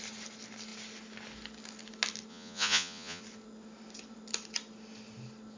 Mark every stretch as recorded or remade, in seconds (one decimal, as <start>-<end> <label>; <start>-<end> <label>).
0.0-2.3 recorded; 2.3-3.2 remade; 3.2-5.6 recorded